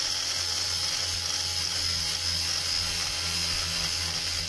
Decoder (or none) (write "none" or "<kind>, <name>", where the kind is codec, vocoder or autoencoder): none